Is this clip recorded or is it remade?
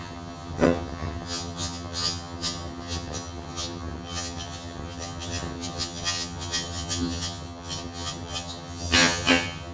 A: remade